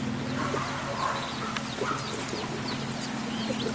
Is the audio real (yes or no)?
yes